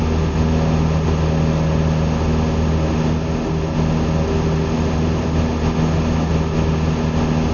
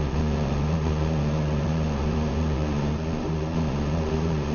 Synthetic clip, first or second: second